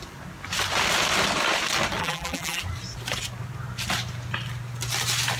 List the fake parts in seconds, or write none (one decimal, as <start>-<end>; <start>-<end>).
2.0-2.6